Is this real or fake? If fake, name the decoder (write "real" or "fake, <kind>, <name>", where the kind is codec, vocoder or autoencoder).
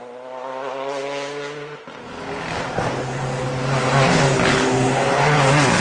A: real